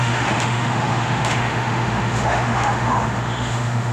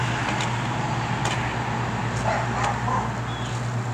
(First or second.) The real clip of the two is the second